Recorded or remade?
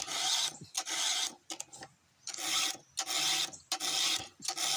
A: recorded